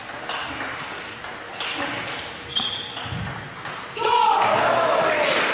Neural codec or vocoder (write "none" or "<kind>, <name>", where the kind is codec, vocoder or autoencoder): none